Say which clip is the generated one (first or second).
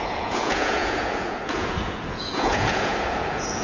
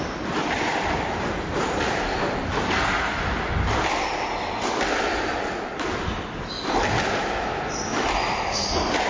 first